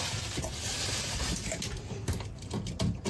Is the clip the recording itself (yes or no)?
yes